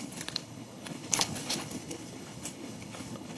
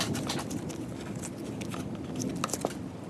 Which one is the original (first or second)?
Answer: second